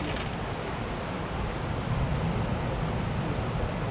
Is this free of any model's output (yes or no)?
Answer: yes